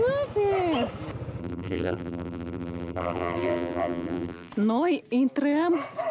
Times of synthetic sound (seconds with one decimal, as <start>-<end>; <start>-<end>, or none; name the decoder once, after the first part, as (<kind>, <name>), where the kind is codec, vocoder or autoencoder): 1.4-4.5 (vocoder, BigVGAN v2)